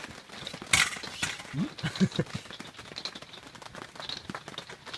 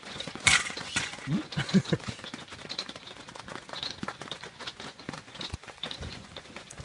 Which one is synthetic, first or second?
second